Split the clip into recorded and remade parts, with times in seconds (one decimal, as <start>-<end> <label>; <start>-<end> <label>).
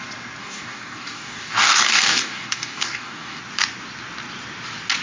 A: 0.0-0.4 recorded; 0.4-3.4 remade; 3.4-5.0 recorded